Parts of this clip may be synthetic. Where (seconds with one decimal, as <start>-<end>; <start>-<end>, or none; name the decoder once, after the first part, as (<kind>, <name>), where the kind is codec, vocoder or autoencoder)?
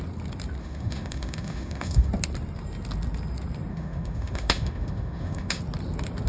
0.6-2.1 (autoencoder, DAC-VAE); 3.7-5.6